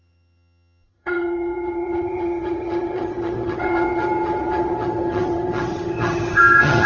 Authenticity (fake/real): fake